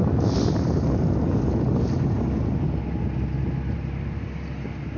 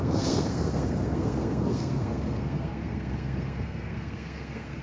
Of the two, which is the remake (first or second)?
second